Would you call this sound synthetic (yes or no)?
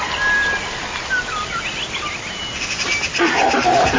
no